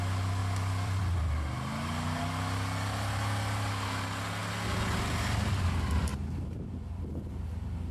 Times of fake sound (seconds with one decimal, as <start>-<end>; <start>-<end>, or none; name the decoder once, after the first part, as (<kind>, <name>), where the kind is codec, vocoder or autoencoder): 0.4-1.0 (vocoder, BigVGAN v2); 6.1-7.0